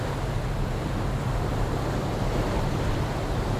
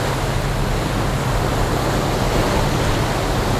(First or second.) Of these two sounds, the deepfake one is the first